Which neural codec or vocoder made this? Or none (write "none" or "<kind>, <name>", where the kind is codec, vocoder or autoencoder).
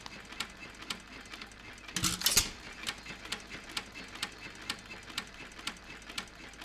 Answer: none